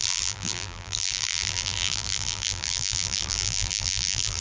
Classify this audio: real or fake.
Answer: fake